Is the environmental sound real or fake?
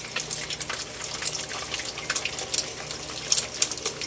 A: real